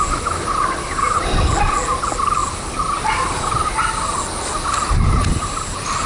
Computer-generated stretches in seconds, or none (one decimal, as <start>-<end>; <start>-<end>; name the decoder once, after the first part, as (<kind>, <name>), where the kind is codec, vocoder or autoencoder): none

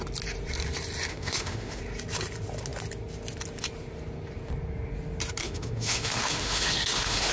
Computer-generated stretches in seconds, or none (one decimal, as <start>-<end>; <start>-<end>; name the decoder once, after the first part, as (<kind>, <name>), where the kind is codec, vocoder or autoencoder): 1.1-1.8 (autoencoder, DAC-VAE); 5.4-7.3

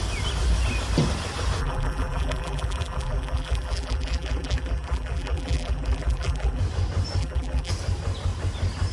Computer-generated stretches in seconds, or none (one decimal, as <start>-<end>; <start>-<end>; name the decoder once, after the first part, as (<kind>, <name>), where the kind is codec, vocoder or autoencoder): 1.6-6.6 (vocoder, BigVGAN v2); 7.2-7.7

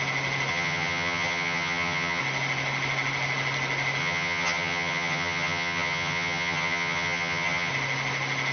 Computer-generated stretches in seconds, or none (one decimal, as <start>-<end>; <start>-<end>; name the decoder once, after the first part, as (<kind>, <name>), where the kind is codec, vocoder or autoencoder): 0.5-2.2 (vocoder, HiFi-GAN); 4.0-7.7

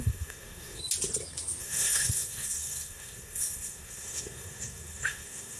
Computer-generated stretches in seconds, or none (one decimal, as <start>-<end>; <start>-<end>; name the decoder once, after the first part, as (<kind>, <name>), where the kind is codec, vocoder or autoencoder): 0.0-0.8 (codec, SNAC); 1.6-5.6

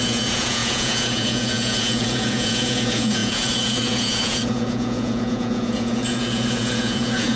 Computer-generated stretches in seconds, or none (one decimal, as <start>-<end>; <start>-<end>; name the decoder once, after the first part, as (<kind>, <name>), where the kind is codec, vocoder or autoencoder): 0.0-7.4 (vocoder, Vocos)

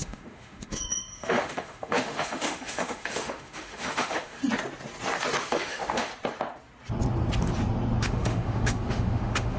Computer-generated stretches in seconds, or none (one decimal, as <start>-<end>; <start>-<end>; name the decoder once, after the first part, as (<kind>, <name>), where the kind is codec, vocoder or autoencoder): 0.0-4.4 (autoencoder, DAC-VAE); 5.4-6.1; 8.0-9.6

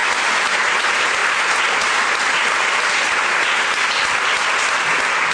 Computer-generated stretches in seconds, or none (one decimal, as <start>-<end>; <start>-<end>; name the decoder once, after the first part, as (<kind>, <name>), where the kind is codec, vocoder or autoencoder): none